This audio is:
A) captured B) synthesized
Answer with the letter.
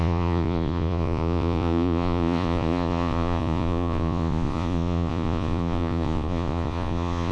B